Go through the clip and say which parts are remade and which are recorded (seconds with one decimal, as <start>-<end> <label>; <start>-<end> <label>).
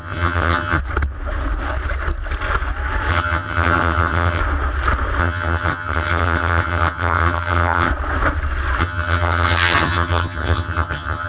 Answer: 0.0-0.8 remade; 0.8-3.1 recorded; 3.1-4.4 remade; 4.4-5.2 recorded; 5.2-7.9 remade; 7.9-8.8 recorded; 8.8-11.3 remade